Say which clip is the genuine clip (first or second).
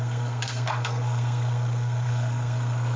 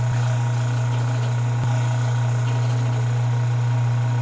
second